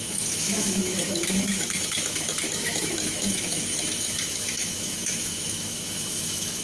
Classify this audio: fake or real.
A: fake